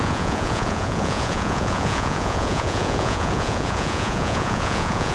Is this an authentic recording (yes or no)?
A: no